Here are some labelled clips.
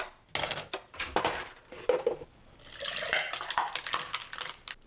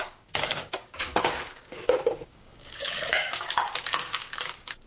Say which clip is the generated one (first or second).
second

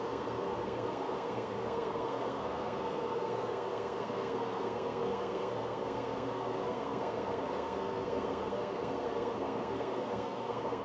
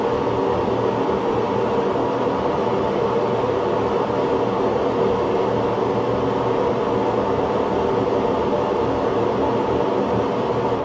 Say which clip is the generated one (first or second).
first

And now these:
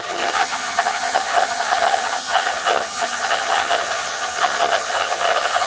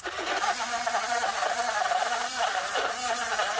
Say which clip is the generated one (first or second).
first